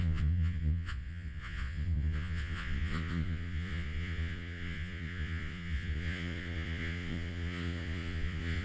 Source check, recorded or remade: remade